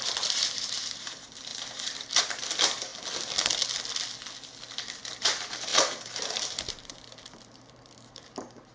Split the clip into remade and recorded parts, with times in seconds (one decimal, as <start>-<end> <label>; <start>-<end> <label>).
0.0-2.9 remade; 2.9-5.0 recorded; 5.0-8.7 remade